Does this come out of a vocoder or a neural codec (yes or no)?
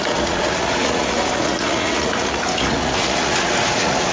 yes